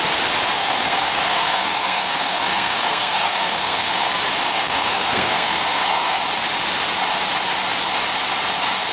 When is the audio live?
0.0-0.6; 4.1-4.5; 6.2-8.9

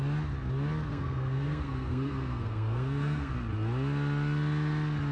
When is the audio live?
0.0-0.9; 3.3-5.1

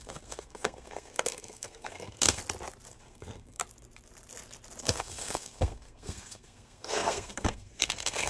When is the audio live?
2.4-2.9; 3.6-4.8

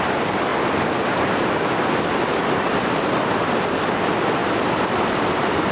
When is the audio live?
0.0-0.5; 3.8-4.4

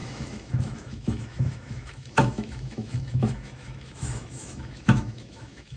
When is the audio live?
none

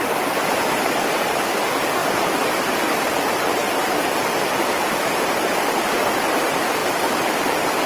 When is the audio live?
0.0-2.0; 5.2-7.9